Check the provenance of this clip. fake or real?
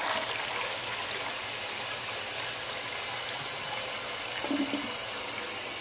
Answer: real